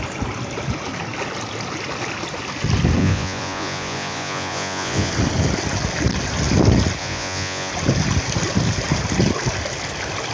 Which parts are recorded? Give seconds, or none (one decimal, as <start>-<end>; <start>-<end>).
0.0-3.0; 5.1-7.0; 7.7-10.3